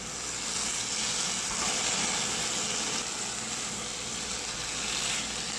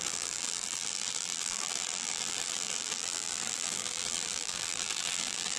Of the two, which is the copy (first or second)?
second